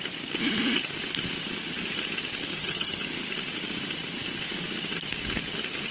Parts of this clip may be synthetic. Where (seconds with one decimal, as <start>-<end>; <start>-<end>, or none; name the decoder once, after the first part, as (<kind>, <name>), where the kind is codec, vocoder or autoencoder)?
2.5-3.1 (vocoder, HiFi-GAN)